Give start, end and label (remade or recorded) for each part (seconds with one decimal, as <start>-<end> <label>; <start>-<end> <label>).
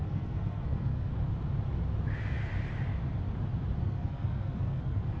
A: 0.0-1.1 remade; 1.1-3.8 recorded; 3.8-5.2 remade